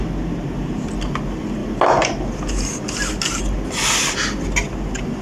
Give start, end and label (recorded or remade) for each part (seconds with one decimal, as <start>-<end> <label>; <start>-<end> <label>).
0.0-5.2 recorded